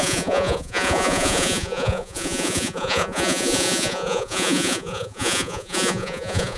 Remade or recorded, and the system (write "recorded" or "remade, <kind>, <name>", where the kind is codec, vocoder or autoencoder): remade, vocoder, Vocos